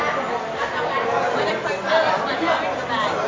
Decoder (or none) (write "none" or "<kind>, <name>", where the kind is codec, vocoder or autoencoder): none